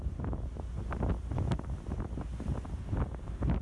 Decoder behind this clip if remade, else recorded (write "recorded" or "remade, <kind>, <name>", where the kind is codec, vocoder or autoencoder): recorded